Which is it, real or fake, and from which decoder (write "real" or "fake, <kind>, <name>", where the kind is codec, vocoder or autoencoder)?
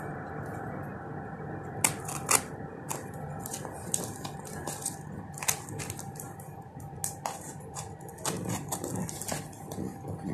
real